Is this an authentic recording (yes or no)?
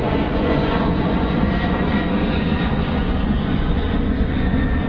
no